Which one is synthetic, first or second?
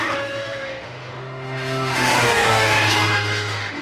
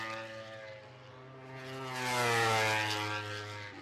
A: first